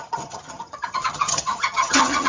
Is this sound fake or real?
fake